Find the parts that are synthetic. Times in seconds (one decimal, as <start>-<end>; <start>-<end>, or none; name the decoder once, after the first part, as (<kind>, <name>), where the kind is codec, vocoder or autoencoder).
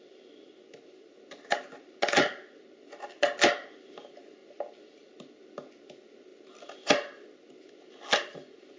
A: none